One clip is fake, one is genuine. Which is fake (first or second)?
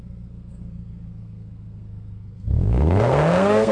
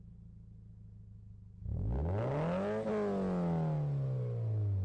first